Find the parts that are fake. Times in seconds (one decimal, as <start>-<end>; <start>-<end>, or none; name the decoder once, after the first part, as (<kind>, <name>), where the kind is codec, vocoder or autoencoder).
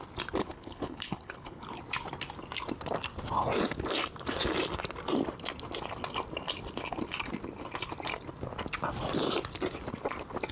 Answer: 0.4-1.8 (codec, HILCodec)